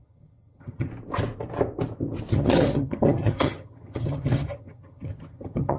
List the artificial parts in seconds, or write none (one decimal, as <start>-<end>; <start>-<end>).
0.0-0.9; 2.3-5.8